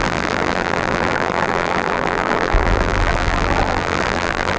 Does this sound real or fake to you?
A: fake